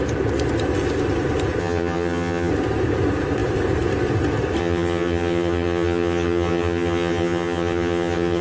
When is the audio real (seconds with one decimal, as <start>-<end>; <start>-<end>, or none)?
0.0-1.6; 2.5-4.6